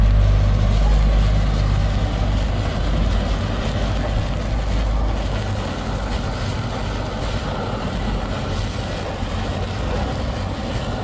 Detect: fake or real real